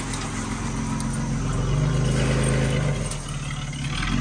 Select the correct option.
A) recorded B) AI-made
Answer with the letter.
A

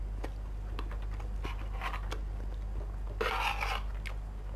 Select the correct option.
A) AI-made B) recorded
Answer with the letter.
B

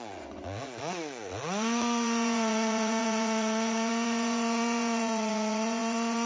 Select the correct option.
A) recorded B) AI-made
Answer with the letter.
B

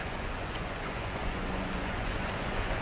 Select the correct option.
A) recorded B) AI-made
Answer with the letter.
B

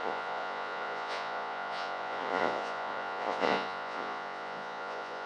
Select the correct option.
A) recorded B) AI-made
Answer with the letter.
B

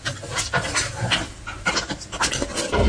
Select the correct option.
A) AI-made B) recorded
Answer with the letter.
B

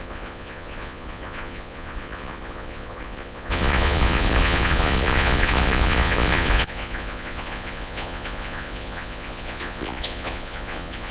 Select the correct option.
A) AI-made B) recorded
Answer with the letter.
A